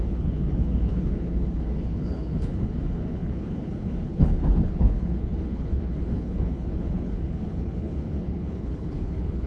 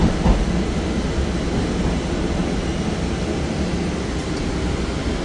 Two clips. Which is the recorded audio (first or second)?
second